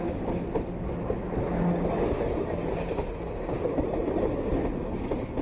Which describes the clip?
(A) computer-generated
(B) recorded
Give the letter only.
B